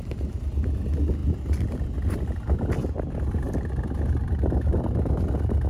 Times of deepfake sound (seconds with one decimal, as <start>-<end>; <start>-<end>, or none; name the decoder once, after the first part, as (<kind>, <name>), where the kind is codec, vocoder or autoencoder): none